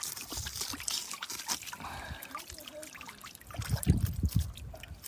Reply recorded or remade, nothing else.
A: recorded